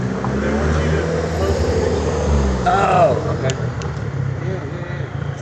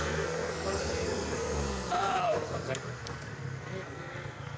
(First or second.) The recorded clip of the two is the first